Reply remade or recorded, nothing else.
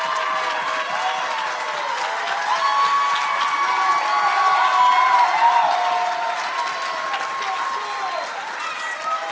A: recorded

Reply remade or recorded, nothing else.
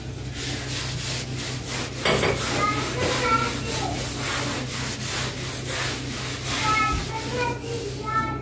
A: recorded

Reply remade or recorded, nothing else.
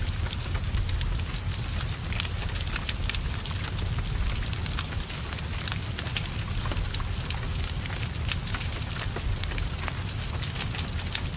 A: recorded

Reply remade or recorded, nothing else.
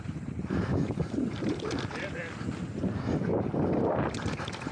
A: recorded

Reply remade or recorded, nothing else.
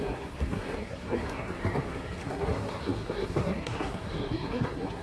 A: remade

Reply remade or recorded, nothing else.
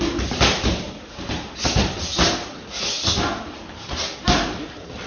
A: recorded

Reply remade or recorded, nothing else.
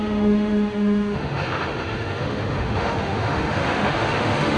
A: remade